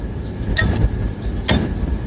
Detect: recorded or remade recorded